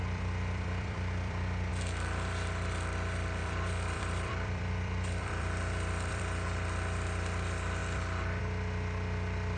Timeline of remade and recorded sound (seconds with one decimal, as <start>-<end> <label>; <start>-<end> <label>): 0.0-1.7 remade; 1.7-3.4 recorded; 3.4-6.2 remade; 6.2-7.8 recorded; 7.8-8.4 remade; 8.4-9.6 recorded